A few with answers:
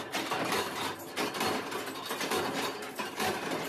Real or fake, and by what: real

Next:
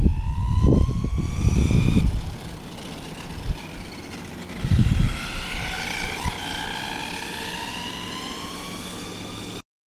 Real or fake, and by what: real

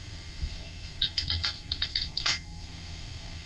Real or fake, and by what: fake, codec, SNAC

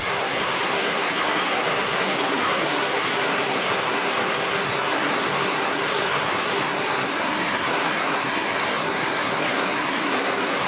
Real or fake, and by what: fake, codec, SNAC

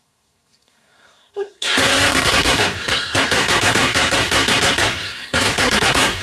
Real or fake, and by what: fake, codec, SNAC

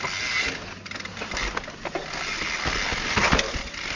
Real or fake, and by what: real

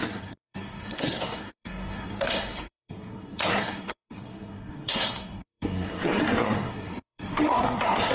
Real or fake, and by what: fake, codec, SNAC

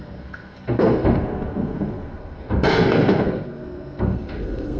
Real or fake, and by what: fake, codec, SNAC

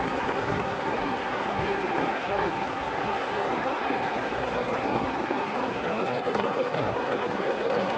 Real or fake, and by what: fake, codec, SNAC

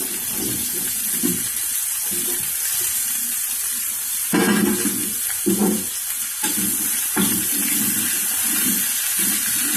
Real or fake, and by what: real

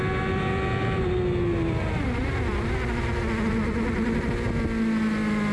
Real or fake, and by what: real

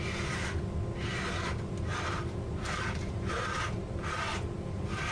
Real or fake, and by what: real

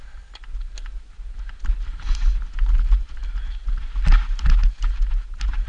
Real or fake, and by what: real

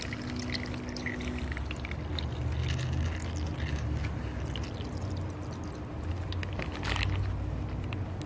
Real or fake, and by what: real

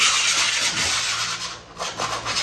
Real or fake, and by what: real